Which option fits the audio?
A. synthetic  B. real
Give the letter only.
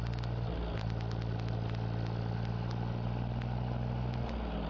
B